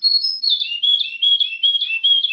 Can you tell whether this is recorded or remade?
recorded